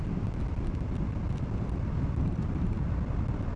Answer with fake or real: real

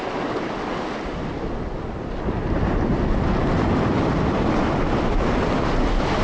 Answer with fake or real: real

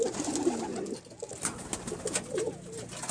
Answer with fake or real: real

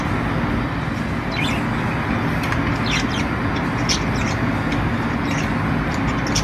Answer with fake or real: real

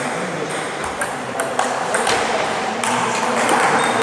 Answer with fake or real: fake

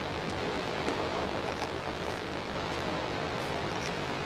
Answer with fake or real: fake